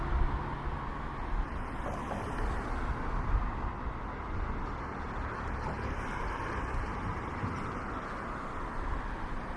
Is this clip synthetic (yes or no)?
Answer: no